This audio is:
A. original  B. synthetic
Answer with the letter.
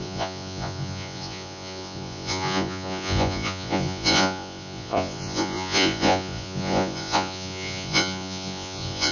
B